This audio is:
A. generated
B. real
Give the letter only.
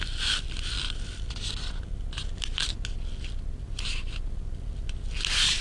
B